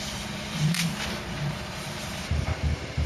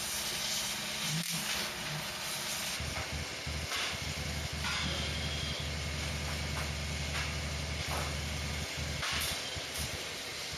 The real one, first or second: second